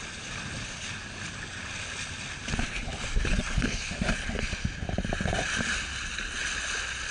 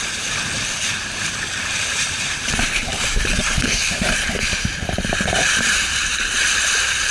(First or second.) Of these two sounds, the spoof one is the second